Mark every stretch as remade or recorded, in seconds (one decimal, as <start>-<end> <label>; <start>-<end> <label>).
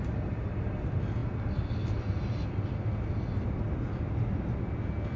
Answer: 0.0-5.2 recorded